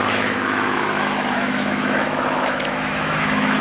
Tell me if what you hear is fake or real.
fake